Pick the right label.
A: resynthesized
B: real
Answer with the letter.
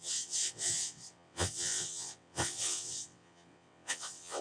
A